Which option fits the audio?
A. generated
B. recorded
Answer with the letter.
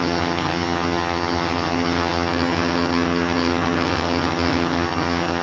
A